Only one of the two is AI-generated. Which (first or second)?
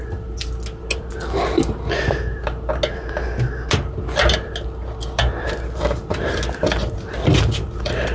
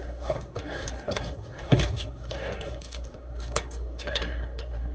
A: second